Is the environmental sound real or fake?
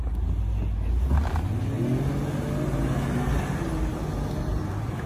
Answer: real